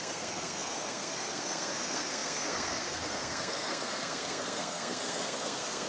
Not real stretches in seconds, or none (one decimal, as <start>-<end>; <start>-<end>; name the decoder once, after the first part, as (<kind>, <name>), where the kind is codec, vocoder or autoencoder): 0.0-5.9 (codec, SNAC)

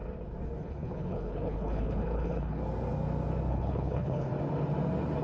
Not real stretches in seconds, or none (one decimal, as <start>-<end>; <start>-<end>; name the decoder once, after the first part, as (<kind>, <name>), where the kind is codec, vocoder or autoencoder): 0.6-2.6 (codec, HILCodec); 3.5-4.3

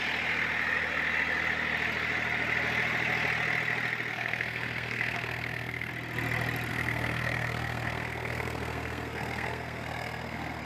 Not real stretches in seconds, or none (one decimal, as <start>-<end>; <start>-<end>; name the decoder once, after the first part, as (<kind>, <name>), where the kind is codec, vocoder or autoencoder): 4.1-5.9 (codec, SNAC); 6.7-10.6

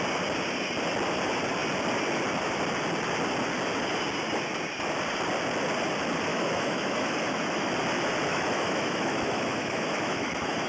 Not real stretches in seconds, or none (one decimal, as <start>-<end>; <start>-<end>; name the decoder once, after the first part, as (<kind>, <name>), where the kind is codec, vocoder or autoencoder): 6.3-7.7 (autoencoder, DAC-VAE); 8.3-10.7